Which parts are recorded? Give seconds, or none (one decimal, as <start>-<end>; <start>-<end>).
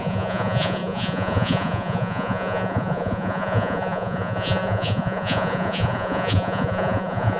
none